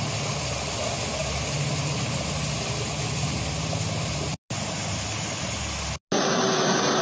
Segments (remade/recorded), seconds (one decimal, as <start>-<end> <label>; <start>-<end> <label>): 0.0-7.0 recorded